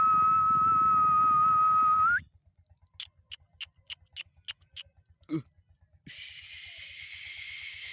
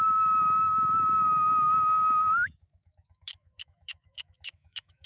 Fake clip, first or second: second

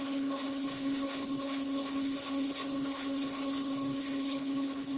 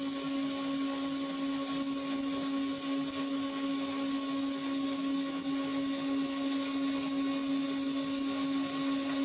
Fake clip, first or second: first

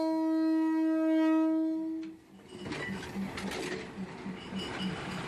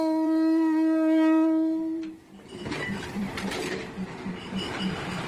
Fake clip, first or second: second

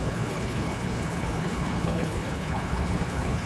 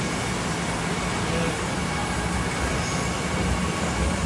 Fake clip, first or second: first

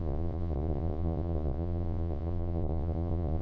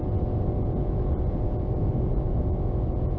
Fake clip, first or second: first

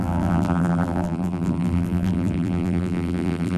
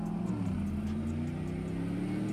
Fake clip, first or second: first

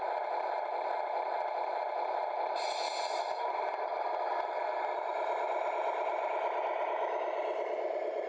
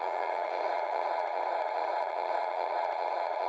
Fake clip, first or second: second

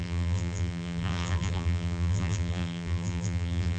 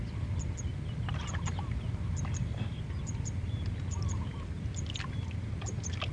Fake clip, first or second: first